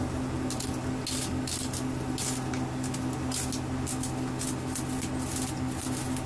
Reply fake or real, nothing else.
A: real